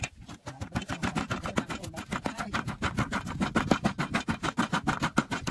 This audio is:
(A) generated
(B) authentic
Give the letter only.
B